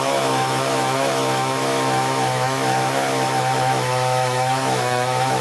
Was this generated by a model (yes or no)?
yes